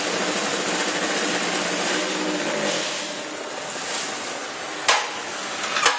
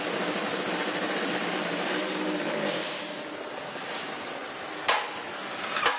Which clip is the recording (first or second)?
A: first